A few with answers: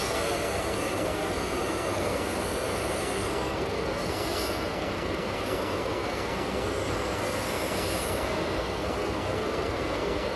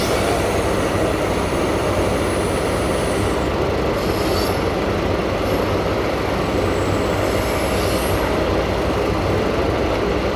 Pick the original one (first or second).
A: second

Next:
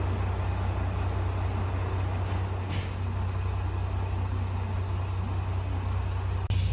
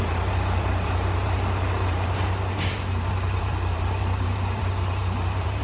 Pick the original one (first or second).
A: first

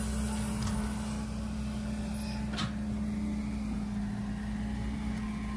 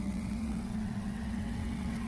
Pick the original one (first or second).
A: first